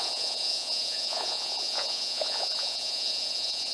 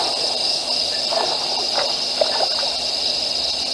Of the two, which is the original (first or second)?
second